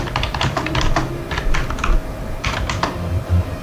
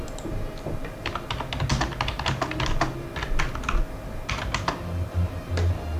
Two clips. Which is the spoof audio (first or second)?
first